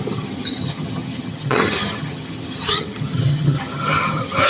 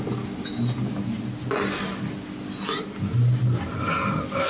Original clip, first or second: second